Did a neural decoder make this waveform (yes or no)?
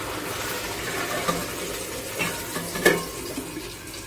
no